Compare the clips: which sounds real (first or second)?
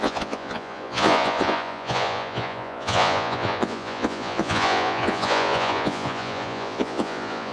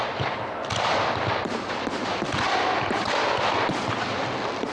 second